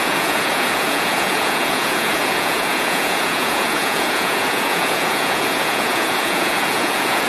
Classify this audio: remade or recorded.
remade